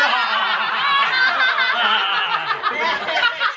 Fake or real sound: real